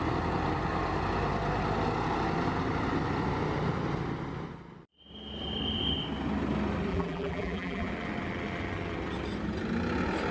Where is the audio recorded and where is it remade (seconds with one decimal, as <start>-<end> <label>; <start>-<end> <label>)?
0.0-6.9 recorded; 6.9-7.9 remade; 7.9-10.3 recorded